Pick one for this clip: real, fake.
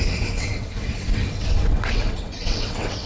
fake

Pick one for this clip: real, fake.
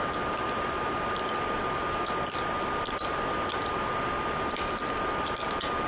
real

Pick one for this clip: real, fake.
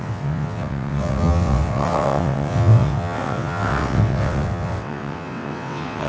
fake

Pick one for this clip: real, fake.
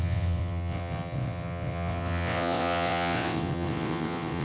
fake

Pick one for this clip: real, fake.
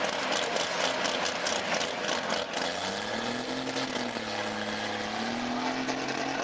real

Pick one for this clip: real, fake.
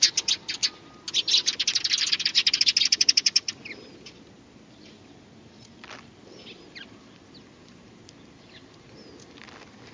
real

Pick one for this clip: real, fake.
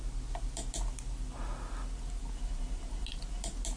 real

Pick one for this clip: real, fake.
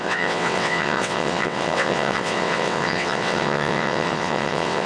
fake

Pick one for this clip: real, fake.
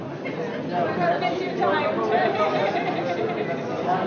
real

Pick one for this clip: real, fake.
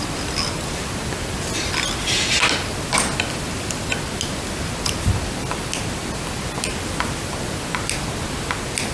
real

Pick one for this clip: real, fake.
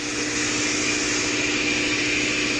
real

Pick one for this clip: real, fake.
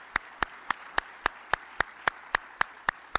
real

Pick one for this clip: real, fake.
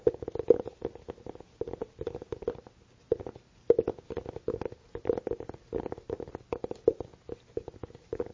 real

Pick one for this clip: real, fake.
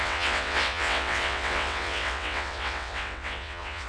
fake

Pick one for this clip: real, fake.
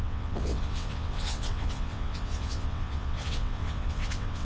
fake